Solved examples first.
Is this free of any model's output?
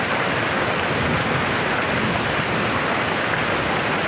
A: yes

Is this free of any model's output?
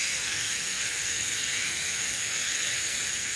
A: no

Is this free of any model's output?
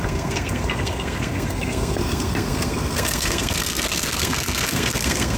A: no